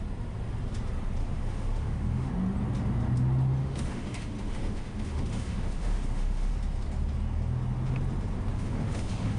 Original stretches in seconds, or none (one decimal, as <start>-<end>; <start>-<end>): 0.0-1.2; 2.3-3.6; 6.5-8.5